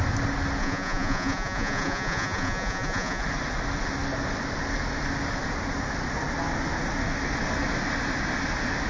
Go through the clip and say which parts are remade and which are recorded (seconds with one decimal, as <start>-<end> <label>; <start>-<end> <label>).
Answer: 0.0-0.6 recorded; 0.6-3.2 remade; 3.2-8.9 recorded